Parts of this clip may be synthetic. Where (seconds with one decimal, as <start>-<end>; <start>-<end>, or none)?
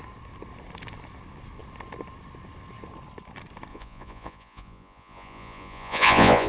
3.7-6.5